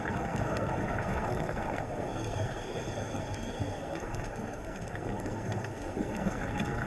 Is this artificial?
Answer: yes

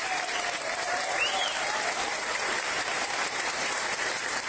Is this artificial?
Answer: yes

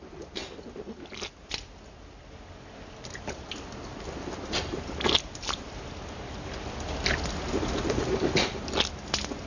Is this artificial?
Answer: no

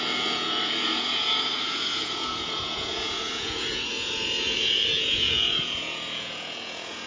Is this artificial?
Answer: yes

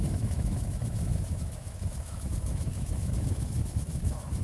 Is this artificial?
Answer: yes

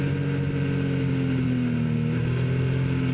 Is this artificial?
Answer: no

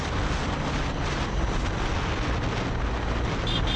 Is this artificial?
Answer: no